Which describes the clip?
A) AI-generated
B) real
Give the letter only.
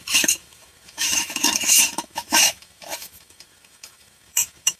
A